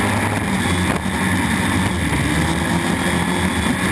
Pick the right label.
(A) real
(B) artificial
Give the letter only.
A